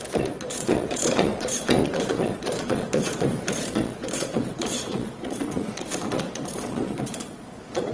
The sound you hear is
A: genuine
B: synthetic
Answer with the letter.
B